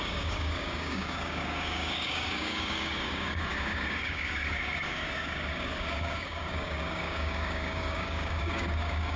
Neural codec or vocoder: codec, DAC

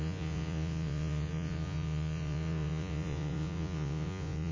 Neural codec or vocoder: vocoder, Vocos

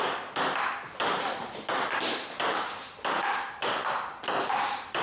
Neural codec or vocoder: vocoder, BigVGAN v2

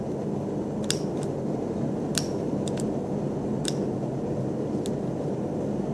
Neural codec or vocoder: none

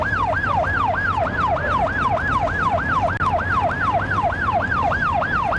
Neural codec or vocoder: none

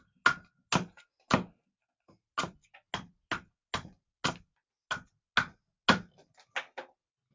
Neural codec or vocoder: none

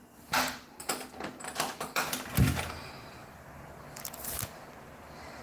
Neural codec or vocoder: none